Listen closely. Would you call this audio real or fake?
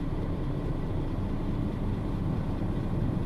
fake